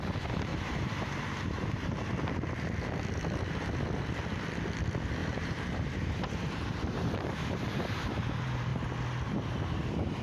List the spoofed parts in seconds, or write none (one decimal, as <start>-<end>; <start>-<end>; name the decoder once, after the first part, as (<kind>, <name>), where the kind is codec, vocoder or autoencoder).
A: 0.5-2.1 (vocoder, BigVGAN v2); 5.2-8.1